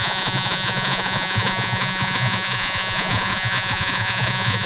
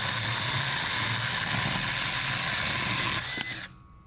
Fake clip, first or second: first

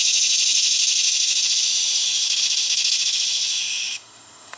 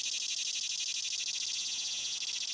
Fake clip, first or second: first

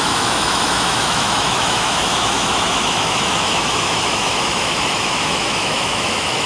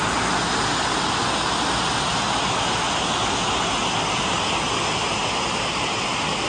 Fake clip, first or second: first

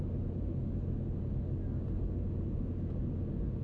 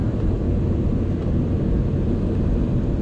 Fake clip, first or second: second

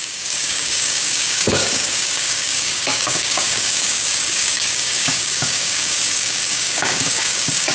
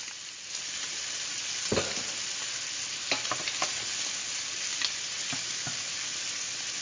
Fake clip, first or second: first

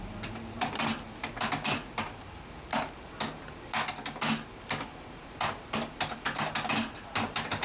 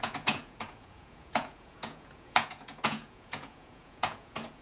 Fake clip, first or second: second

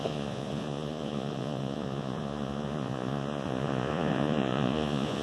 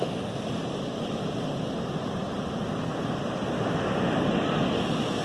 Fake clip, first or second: first